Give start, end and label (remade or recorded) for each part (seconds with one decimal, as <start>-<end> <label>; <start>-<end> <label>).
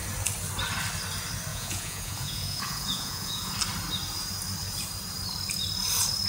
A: 0.0-1.5 recorded; 1.5-3.5 remade; 3.5-6.3 recorded